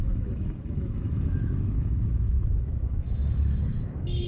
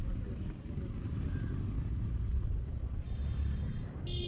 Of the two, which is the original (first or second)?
second